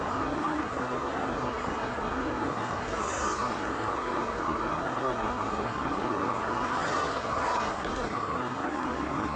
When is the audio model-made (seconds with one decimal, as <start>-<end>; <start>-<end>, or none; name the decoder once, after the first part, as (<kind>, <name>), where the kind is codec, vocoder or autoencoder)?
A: 0.0-9.4 (codec, SNAC)